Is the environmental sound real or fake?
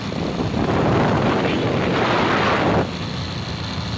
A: real